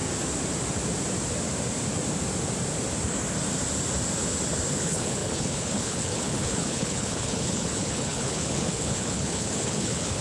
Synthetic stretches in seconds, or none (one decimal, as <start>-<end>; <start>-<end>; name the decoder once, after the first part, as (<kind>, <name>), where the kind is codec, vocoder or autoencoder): 4.8-10.2 (codec, HILCodec)